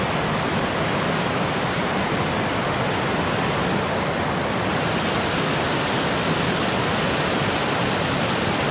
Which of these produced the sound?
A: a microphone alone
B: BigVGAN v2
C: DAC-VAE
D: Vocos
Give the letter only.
A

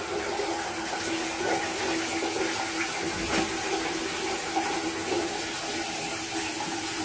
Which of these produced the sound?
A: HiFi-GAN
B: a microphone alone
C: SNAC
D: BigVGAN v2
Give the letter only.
B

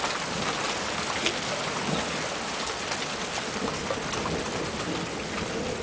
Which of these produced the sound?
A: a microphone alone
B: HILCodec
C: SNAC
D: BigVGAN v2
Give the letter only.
A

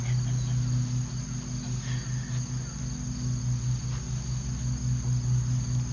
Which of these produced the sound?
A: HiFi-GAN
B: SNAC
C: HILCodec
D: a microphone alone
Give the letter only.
D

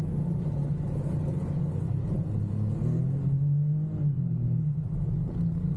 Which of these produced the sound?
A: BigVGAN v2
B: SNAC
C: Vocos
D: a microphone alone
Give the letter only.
D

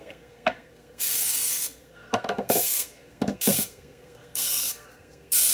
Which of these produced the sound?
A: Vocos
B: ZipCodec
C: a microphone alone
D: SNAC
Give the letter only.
D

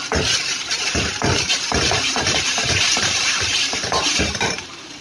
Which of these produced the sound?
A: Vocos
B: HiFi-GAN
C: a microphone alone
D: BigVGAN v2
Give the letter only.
D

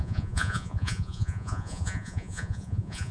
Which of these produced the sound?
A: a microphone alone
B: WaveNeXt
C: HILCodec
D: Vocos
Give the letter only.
D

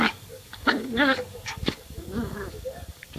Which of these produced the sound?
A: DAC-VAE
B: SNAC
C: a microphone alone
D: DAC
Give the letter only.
D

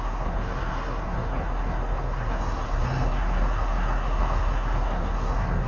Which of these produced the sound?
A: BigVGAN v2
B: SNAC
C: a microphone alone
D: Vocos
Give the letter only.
B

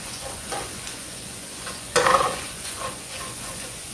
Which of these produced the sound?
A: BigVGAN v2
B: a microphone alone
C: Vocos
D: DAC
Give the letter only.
C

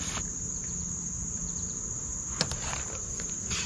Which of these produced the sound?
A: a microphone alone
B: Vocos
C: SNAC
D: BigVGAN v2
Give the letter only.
A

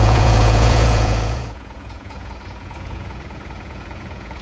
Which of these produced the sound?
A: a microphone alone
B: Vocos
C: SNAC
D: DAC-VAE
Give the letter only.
B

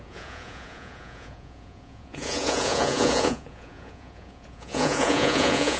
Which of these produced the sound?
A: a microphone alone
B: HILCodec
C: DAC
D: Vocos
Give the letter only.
D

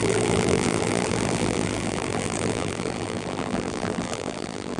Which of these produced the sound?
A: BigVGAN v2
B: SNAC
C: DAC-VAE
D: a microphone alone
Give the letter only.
A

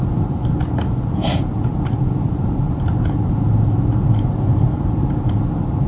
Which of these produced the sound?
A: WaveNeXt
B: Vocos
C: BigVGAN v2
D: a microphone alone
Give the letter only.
D